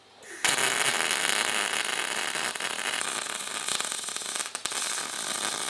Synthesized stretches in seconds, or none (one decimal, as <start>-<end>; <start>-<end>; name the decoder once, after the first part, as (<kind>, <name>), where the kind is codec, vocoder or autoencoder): none